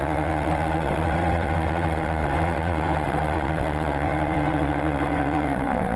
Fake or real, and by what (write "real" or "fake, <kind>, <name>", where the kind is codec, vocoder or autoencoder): fake, vocoder, WaveNeXt